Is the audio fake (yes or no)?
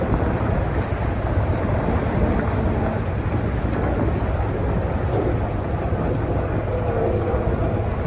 no